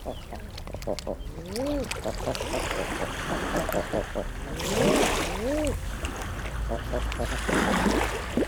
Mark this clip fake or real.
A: real